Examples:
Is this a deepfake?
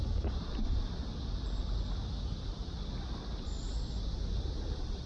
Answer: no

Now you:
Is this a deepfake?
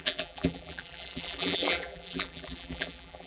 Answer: yes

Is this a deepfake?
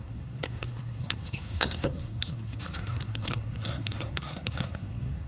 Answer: yes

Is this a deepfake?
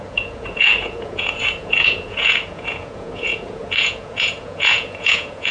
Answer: yes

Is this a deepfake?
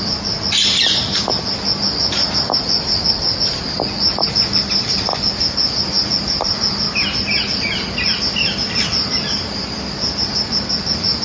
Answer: no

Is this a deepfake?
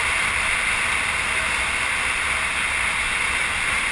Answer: no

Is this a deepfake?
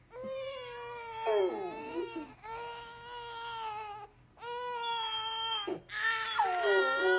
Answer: no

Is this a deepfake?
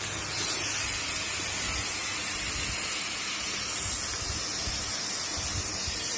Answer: no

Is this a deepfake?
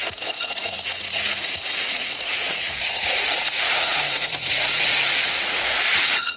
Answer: yes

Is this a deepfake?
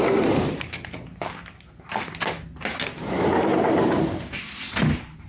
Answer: no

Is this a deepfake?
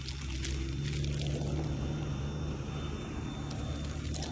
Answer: no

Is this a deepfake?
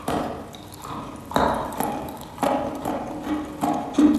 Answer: no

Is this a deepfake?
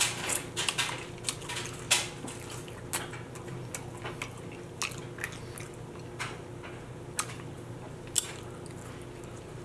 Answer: no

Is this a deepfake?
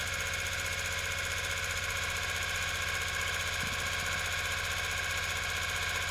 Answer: no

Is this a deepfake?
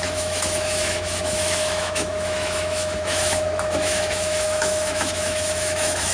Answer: yes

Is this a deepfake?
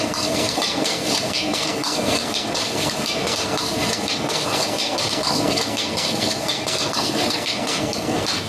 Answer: yes